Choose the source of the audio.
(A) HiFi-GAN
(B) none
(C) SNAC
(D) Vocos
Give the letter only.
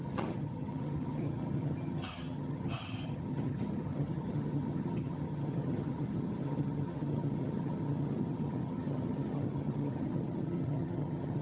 A